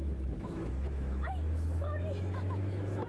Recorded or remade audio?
remade